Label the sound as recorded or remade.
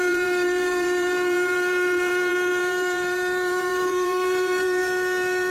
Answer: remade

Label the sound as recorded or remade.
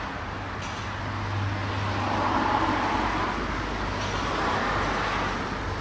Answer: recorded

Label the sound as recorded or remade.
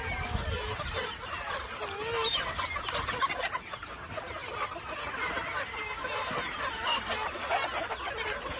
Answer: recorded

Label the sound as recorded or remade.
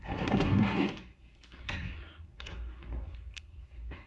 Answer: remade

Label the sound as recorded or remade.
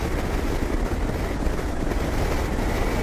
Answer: recorded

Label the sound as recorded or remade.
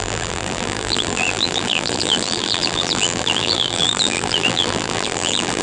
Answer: remade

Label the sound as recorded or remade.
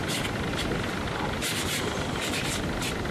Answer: recorded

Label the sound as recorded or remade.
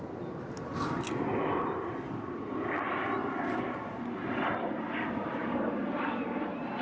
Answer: recorded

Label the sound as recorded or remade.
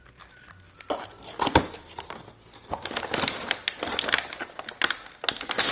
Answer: recorded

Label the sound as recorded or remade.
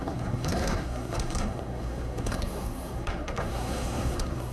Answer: remade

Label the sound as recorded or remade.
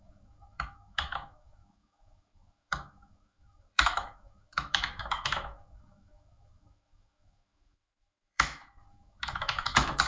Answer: remade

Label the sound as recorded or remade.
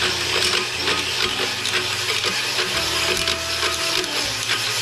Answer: recorded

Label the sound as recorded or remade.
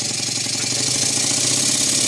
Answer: recorded